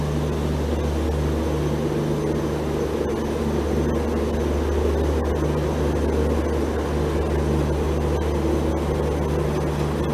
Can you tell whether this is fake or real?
real